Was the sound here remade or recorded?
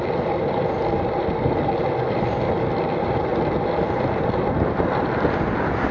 recorded